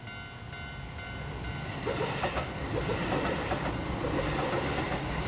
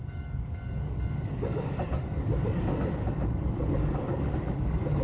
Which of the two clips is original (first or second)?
first